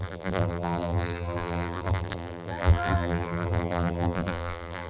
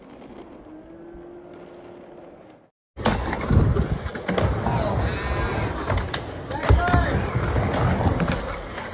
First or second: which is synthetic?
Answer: first